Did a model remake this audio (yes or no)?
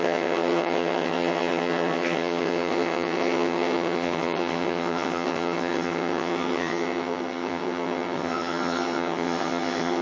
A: yes